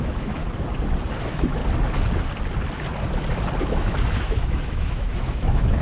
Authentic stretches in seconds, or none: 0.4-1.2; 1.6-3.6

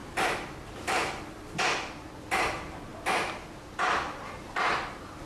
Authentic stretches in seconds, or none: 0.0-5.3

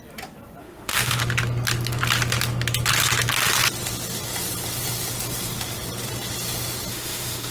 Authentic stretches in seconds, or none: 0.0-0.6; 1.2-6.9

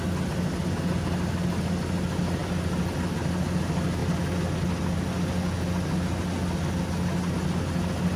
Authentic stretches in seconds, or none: 0.0-8.2

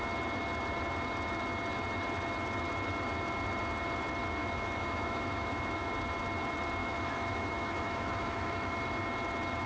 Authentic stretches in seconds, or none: 0.0-4.4; 5.9-6.8; 8.8-9.7

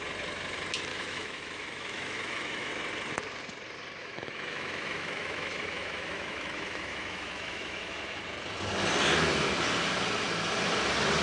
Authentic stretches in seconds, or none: 0.0-0.9; 2.7-4.0; 8.2-11.2